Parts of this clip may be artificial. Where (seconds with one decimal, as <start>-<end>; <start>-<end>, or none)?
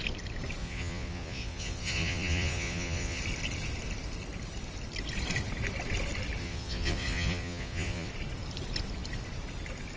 0.6-3.2; 6.4-8.1